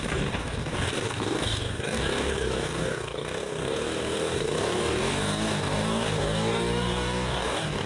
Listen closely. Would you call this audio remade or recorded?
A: remade